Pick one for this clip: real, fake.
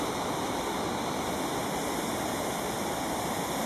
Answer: real